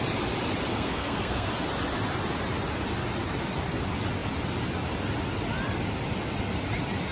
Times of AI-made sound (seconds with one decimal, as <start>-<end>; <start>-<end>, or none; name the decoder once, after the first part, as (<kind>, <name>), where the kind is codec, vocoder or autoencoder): 0.7-1.5 (codec, SNAC)